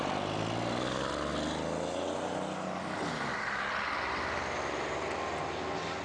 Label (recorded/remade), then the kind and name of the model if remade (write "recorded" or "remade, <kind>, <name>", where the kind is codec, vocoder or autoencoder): recorded